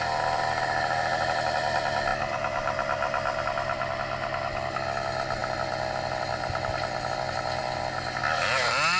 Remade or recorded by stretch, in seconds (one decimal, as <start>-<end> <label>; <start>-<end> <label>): 0.0-9.0 recorded